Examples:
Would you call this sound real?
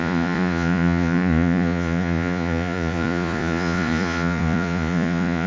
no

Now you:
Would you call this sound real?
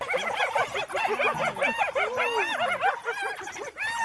yes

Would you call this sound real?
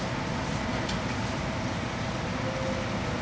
yes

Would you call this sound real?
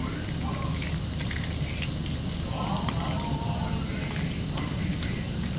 yes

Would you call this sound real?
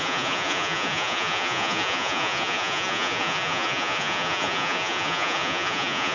no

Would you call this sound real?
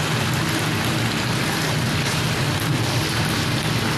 yes